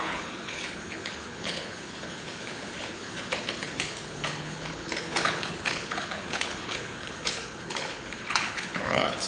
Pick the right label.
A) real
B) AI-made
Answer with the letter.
B